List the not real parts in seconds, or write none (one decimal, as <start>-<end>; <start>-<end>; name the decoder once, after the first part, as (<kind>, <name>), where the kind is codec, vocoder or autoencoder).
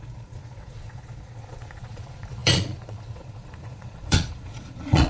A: 0.0-5.1 (vocoder, Vocos)